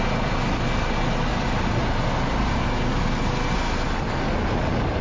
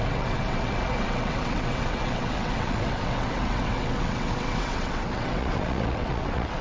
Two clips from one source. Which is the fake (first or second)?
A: second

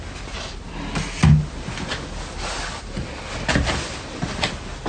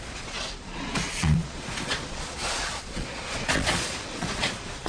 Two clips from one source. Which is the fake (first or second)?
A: second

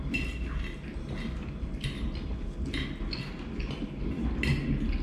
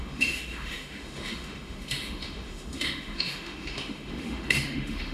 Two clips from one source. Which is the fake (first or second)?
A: second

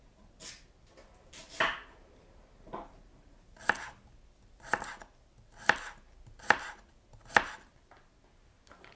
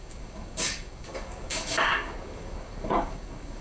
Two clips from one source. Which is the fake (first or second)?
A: second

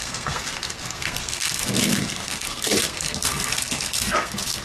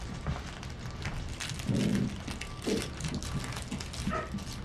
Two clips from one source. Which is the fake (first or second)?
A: first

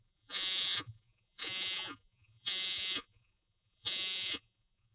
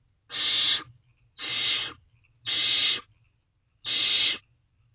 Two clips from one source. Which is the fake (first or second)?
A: first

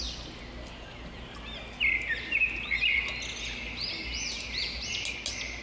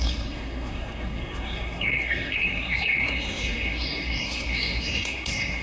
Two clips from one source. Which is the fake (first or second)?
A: second